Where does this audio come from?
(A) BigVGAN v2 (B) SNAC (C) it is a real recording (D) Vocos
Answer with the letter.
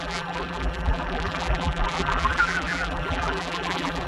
A